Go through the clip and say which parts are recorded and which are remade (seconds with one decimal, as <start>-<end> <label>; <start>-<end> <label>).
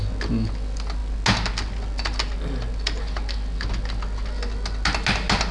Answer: 0.0-5.5 recorded